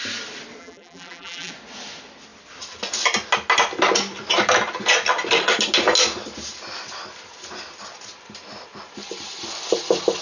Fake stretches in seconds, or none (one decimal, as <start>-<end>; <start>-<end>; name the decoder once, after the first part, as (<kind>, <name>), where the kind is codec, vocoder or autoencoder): 0.6-1.5 (vocoder, BigVGAN v2)